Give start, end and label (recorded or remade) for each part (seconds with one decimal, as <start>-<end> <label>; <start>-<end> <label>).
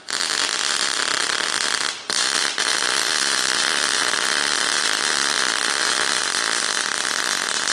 0.0-7.7 recorded